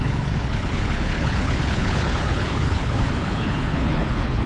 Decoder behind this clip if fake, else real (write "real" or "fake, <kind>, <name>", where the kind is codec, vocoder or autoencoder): fake, codec, HILCodec